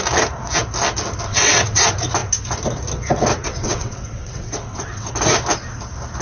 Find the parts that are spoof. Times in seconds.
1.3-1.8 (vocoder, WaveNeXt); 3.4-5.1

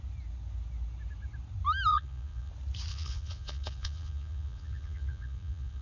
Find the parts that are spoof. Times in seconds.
1.9-2.5 (vocoder, Vocos); 2.9-5.8

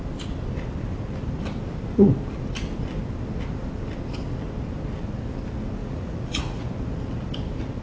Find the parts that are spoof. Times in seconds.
5.8-6.6 (vocoder, Vocos)

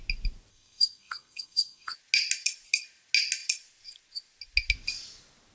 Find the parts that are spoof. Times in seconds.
0.5-1.9 (codec, SNAC)

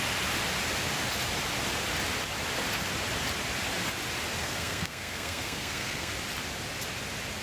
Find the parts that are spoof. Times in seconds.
4.4-6.1 (codec, SNAC)

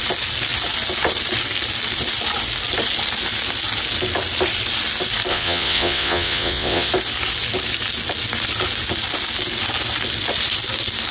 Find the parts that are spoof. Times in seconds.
5.3-6.9 (vocoder, WaveNeXt)